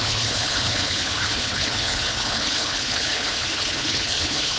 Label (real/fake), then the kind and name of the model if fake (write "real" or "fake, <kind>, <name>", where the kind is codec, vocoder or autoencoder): fake, codec, HILCodec